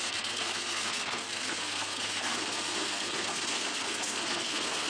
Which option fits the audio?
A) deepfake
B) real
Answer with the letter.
A